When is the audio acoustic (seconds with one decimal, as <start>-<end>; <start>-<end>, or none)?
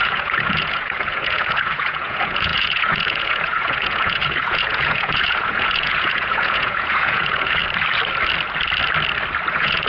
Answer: 7.6-9.5